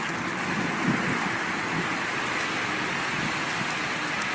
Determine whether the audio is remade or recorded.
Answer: recorded